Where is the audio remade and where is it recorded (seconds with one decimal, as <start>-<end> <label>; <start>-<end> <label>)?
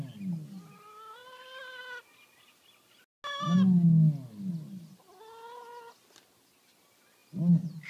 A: 0.0-7.9 recorded